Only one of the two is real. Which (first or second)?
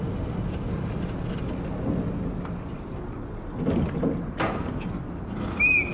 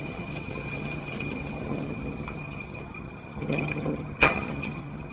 first